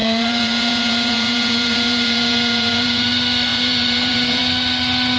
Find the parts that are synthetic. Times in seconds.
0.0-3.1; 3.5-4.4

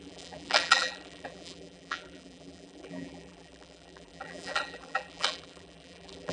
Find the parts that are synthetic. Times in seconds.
0.0-6.3